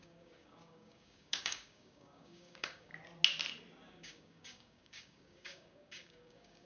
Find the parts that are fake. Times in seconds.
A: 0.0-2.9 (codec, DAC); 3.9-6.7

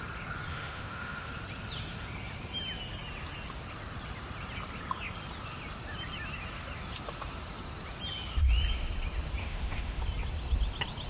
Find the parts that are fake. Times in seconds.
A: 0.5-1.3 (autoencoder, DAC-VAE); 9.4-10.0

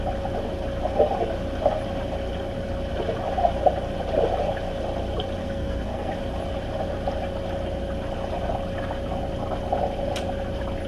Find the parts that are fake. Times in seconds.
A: 5.4-6.1 (codec, SNAC)